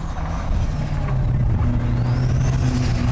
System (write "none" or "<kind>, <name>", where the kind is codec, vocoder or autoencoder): none